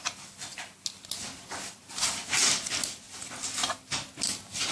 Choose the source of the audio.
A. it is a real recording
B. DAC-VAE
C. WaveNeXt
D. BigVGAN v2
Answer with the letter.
A